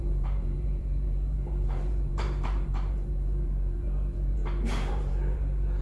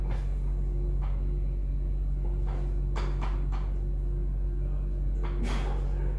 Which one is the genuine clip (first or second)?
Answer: second